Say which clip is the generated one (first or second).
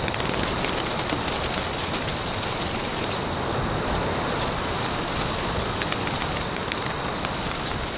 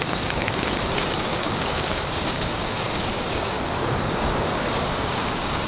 second